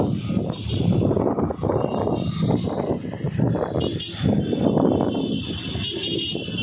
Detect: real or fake real